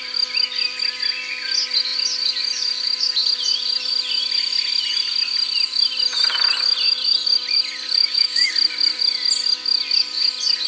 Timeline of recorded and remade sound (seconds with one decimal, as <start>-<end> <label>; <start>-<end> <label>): 0.0-8.0 recorded; 8.0-8.5 remade; 8.5-10.7 recorded